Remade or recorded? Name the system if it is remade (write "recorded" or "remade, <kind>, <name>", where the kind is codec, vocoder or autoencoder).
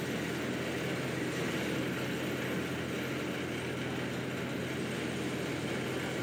recorded